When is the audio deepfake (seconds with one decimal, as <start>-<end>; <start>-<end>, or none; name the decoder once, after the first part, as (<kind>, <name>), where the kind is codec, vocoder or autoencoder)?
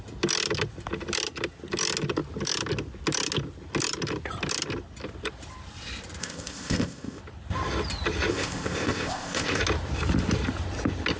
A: 6.2-7.2 (codec, ZipCodec); 8.3-9.6